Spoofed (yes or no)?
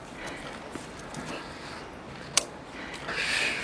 yes